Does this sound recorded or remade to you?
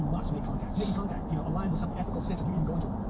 recorded